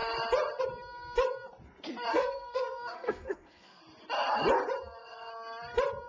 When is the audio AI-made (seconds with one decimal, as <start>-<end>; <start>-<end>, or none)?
2.1-3.8